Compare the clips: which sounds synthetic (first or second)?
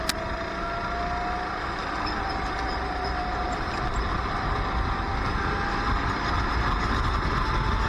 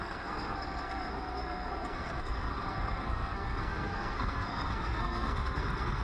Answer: second